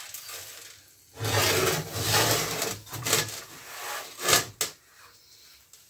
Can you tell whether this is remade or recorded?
recorded